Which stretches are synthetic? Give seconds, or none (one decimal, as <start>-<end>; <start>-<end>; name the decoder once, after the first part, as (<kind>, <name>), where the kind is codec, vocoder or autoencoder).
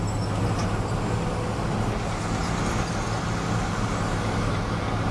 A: none